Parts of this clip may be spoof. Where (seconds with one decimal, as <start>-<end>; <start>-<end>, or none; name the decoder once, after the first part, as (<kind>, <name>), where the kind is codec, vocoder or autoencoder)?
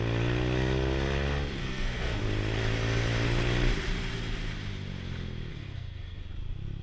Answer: 1.6-2.2 (codec, SNAC); 5.5-6.2